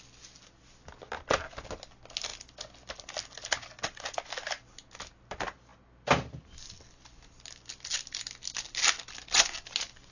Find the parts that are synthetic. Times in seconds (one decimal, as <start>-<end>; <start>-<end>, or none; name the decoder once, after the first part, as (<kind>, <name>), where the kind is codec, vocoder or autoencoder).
none